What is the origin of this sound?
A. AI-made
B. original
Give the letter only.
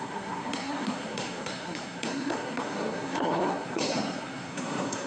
A